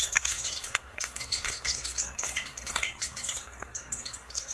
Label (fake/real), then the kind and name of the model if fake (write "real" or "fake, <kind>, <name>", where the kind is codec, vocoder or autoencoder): fake, codec, SNAC